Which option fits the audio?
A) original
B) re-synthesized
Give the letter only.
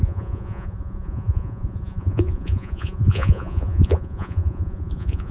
B